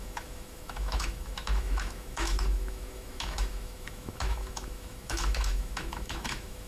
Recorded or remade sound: remade